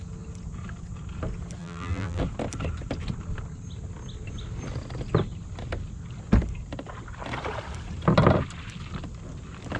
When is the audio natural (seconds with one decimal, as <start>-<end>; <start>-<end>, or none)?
0.0-1.6; 2.2-9.8